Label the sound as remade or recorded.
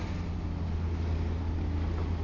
recorded